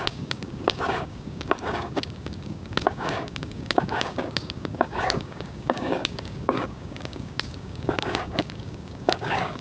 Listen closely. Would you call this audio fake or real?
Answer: fake